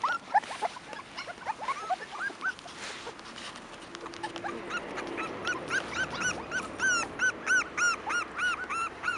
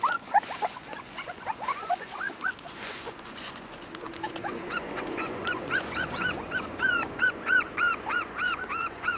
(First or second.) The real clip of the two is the first